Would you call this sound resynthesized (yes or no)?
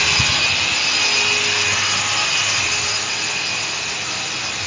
no